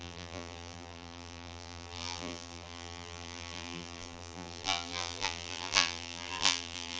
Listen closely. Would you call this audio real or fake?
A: fake